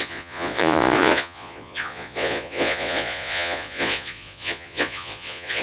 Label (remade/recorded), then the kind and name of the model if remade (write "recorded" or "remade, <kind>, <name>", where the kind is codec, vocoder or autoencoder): remade, vocoder, Vocos